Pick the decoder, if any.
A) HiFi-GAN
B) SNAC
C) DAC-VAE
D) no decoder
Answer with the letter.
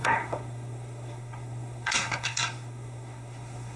B